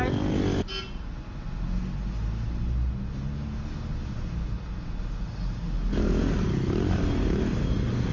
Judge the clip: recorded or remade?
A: recorded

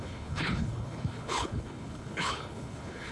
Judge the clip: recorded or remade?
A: remade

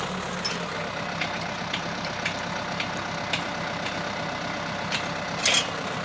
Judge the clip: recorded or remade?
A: recorded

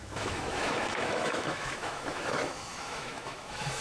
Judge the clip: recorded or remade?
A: remade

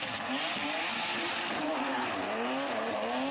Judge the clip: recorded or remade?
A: recorded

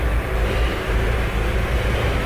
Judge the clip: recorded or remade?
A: recorded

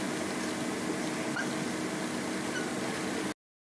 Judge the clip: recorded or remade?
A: recorded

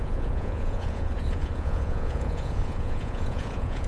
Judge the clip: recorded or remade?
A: remade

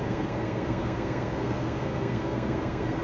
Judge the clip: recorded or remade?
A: remade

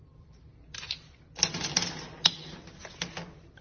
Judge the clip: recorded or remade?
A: recorded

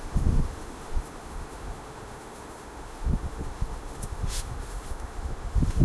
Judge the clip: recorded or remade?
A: remade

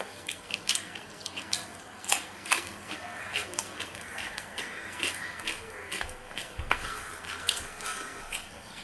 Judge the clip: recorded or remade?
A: remade